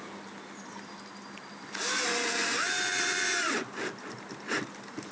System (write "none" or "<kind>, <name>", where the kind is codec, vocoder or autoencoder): none